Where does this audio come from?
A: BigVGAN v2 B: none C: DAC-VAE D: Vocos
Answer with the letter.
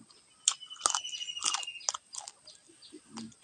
B